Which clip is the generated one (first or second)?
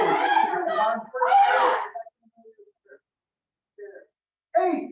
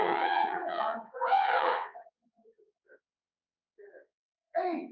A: second